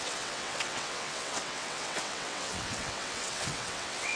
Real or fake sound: fake